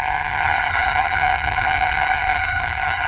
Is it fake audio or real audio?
fake